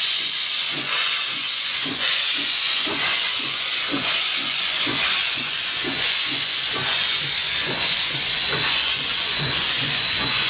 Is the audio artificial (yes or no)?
yes